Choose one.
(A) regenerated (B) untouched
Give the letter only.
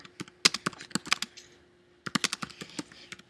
B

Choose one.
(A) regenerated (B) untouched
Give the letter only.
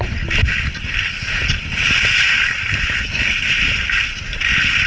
B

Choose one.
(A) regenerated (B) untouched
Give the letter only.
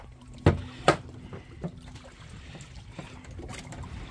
B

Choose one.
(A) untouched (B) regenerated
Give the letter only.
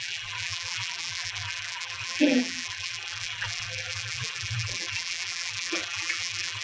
B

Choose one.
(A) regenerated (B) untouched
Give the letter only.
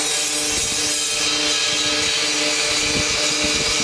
B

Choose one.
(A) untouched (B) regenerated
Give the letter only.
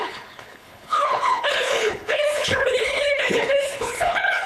B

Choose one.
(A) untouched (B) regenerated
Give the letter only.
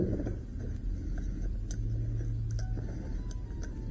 A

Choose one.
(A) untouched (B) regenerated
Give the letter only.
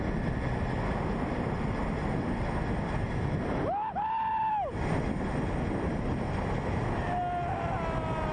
A